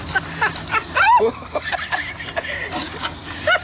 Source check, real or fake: real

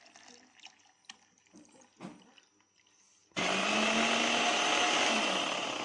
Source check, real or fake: real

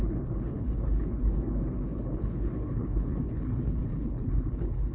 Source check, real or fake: fake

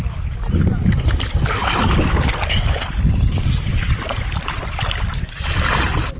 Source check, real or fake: real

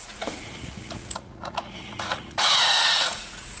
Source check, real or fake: fake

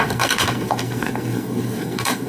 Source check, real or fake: fake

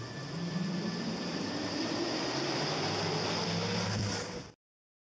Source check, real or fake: real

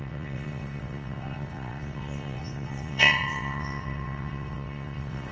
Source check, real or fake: fake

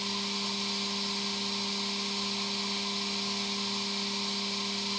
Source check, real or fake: real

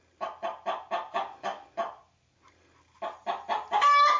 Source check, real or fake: real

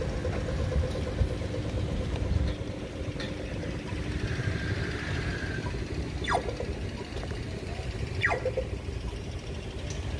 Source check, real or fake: real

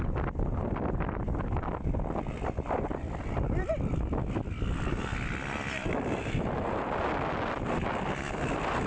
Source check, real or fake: real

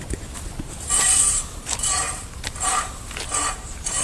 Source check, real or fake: fake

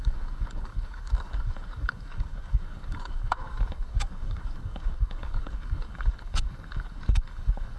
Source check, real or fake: fake